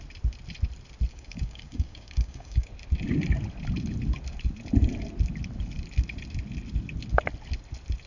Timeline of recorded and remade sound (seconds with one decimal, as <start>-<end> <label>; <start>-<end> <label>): 0.0-1.1 recorded; 1.1-2.7 remade; 2.7-8.1 recorded

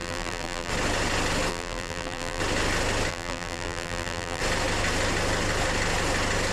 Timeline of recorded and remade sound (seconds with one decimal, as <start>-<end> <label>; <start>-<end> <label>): 0.0-0.7 remade; 0.7-1.5 recorded; 1.5-2.4 remade; 2.4-3.1 recorded; 3.1-4.4 remade; 4.4-6.5 recorded

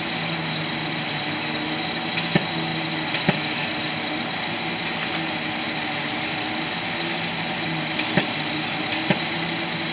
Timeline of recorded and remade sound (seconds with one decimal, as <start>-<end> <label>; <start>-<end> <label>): 0.0-9.9 recorded

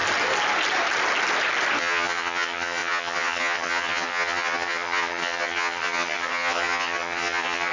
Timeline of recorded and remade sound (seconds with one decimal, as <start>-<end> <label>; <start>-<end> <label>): 0.0-1.8 recorded; 1.8-7.7 remade